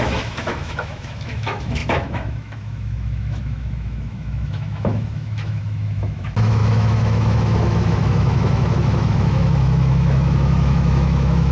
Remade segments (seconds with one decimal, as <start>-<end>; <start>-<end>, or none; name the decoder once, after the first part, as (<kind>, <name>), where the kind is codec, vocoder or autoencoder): 0.0-11.5 (autoencoder, DAC-VAE)